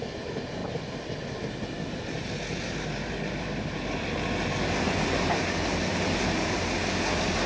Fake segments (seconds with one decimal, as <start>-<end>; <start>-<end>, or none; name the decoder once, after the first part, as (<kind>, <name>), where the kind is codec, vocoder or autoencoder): none